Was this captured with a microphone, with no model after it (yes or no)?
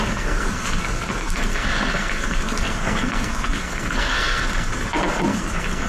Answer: no